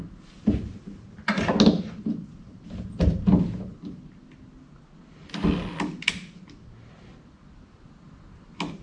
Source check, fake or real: real